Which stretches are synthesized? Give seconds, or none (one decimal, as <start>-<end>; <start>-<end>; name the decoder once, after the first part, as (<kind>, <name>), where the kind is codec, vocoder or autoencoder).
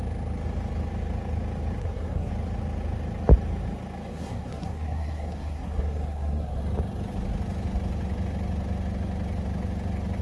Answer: 1.8-2.3 (codec, SNAC); 4.1-6.6